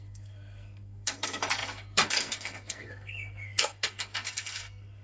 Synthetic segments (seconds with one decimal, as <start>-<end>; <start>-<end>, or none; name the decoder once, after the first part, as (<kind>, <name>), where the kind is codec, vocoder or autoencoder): 0.0-5.0 (codec, SNAC)